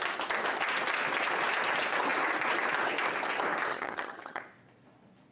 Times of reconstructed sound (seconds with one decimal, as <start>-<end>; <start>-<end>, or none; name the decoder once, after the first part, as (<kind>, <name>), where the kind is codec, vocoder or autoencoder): 3.7-4.4 (vocoder, HiFi-GAN)